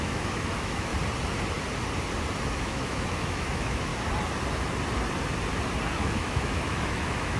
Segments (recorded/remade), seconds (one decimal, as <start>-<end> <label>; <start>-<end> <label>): 0.0-0.9 remade; 0.9-2.5 recorded; 2.5-3.9 remade; 3.9-5.9 recorded; 5.9-7.4 remade